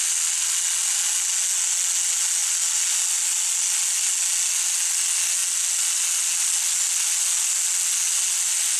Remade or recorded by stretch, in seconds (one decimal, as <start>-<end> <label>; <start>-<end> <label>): 0.0-8.8 recorded